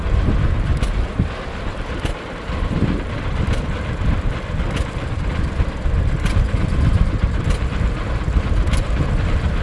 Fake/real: fake